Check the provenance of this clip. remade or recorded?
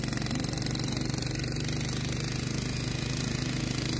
recorded